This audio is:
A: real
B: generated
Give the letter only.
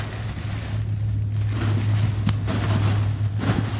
A